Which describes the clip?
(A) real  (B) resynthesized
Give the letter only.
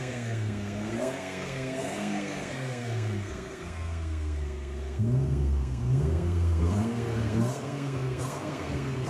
B